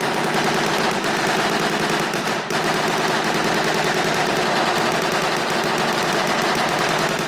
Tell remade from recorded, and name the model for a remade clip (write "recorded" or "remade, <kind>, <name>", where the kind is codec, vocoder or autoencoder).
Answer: recorded